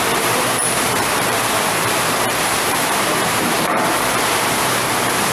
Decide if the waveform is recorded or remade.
remade